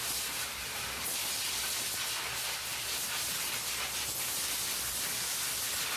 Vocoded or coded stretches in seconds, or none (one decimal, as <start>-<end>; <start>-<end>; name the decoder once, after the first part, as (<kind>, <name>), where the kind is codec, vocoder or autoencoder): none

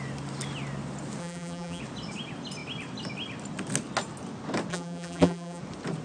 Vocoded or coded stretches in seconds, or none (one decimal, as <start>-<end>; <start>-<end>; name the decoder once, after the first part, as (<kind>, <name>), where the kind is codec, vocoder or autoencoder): 1.2-1.8 (vocoder, BigVGAN v2); 4.7-5.6

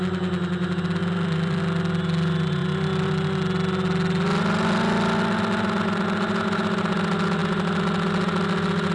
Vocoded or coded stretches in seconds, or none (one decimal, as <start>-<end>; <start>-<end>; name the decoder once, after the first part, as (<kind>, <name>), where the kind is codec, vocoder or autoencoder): 1.0-1.6 (vocoder, BigVGAN v2)